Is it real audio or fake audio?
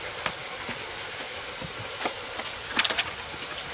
real